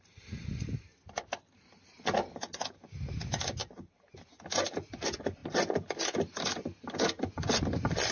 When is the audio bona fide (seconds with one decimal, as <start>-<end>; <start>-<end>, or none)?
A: 0.0-8.1